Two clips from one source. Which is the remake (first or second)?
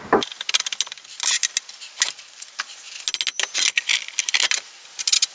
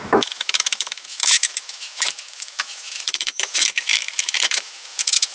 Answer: second